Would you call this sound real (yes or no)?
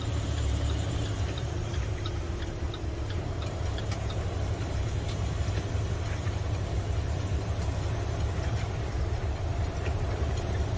no